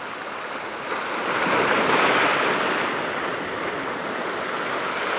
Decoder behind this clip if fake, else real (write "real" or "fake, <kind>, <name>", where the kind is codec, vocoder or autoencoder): real